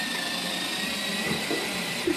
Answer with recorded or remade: recorded